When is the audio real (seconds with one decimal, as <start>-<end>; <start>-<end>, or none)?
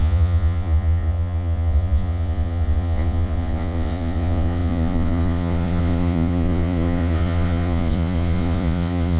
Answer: none